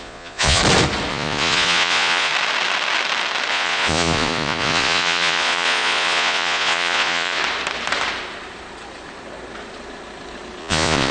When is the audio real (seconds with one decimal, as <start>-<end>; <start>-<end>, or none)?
0.6-1.1; 2.3-3.5; 7.4-10.6